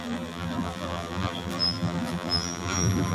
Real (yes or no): no